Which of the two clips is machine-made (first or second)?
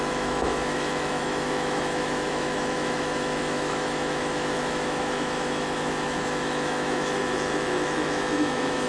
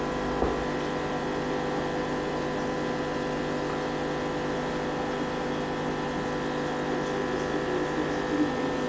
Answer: first